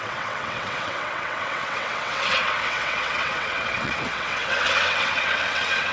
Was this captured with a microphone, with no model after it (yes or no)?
no